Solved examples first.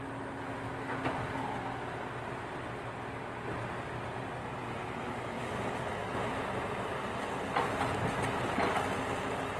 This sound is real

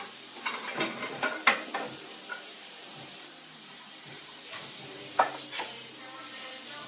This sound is fake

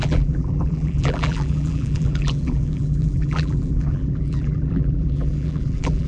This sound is fake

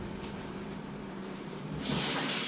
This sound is fake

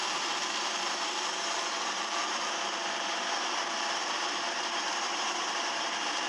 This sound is fake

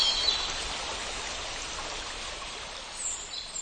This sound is fake